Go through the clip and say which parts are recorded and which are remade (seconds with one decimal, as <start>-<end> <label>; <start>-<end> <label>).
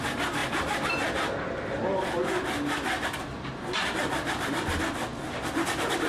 0.0-6.1 recorded